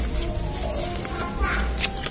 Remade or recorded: recorded